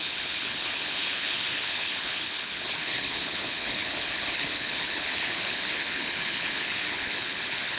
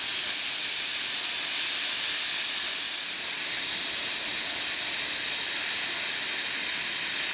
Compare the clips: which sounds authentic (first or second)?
second